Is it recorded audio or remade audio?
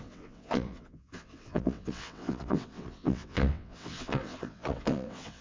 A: remade